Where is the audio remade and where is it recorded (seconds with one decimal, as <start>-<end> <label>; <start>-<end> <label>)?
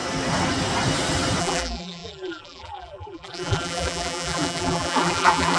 0.0-1.4 recorded; 1.4-5.6 remade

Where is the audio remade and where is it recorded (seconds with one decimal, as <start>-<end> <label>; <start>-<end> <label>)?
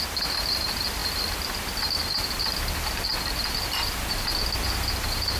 0.0-5.4 recorded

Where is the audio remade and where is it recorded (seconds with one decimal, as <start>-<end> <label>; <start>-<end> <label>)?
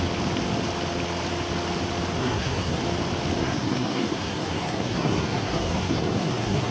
0.0-2.2 recorded; 2.2-2.8 remade; 2.8-3.4 recorded; 3.4-6.7 remade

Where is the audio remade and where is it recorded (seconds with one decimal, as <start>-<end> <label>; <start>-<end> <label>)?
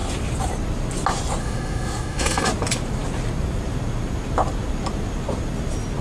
0.0-1.4 recorded; 1.4-2.5 remade; 2.5-6.0 recorded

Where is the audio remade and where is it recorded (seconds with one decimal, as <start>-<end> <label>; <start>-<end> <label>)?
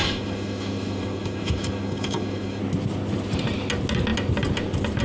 0.0-2.6 remade; 2.6-5.0 recorded